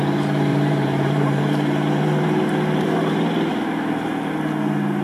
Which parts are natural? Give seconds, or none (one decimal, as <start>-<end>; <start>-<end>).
0.0-0.5; 3.5-5.0